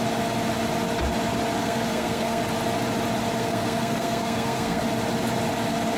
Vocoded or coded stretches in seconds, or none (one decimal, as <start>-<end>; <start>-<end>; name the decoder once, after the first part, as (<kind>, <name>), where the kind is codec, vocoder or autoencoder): 1.6-2.4 (codec, SNAC); 3.4-4.8